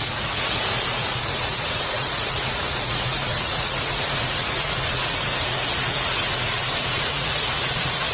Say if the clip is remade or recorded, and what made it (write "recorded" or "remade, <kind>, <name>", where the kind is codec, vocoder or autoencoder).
remade, vocoder, Vocos